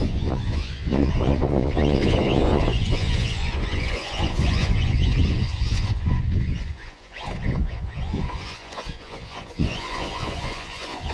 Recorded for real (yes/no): no